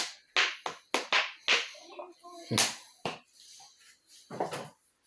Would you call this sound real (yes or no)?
yes